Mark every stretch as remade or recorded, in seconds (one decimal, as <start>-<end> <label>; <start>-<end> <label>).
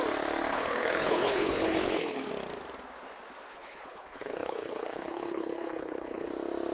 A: 0.0-0.5 recorded; 0.5-2.3 remade; 2.3-3.5 recorded; 3.5-6.3 remade; 6.3-6.7 recorded